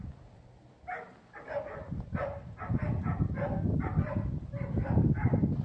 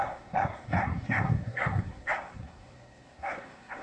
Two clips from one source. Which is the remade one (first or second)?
second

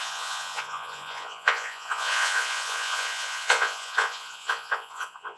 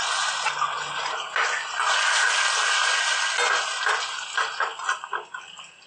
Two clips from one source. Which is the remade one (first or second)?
first